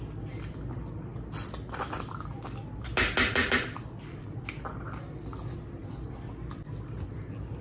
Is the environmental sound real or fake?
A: real